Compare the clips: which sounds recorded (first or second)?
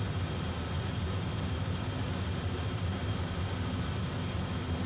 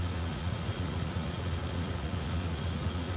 first